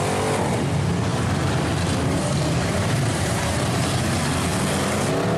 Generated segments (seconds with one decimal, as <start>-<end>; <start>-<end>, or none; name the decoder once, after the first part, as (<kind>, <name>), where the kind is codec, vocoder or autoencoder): 1.1-4.0 (vocoder, BigVGAN v2)